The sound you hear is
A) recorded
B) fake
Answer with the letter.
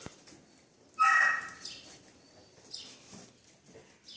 A